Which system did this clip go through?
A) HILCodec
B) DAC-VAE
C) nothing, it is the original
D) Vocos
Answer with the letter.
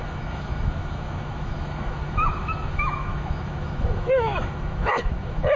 B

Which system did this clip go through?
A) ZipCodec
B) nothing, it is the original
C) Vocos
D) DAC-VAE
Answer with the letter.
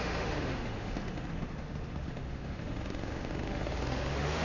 D